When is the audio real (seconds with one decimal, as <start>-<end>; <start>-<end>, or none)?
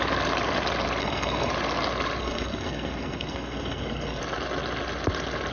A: 0.0-1.0; 1.5-2.2; 4.2-5.5